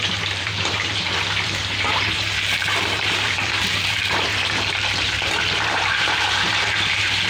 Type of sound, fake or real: fake